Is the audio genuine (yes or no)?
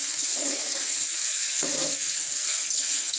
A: no